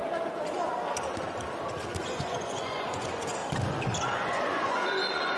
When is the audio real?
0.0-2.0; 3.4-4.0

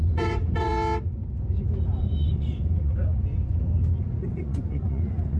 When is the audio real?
0.7-2.0; 3.1-4.2

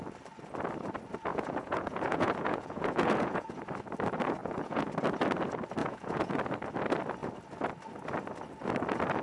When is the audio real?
0.0-1.3; 3.6-4.4; 4.9-5.8; 6.4-9.2

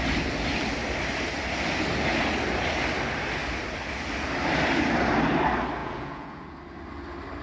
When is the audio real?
0.0-5.8; 6.6-7.4

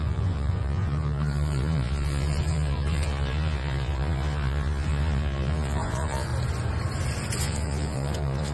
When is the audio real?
6.3-7.4